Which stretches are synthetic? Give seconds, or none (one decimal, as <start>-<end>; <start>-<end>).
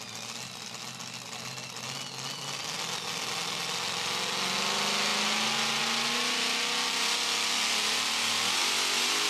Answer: none